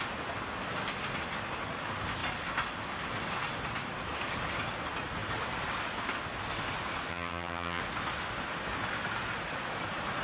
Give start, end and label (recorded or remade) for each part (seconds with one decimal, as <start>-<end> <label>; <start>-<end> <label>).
0.0-7.1 recorded; 7.1-7.8 remade; 7.8-10.2 recorded